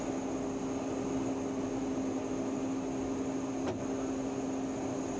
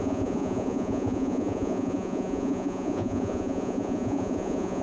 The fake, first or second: second